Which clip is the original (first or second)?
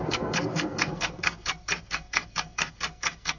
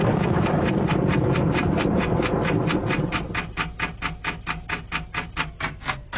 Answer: second